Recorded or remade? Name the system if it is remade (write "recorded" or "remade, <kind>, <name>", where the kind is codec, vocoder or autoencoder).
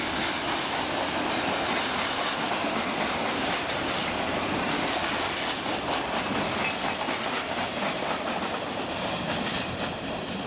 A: recorded